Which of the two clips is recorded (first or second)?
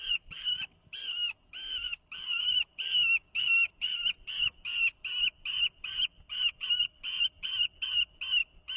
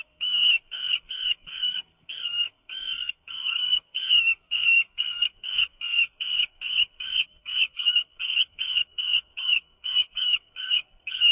first